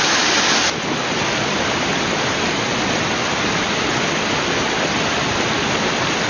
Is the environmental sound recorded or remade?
recorded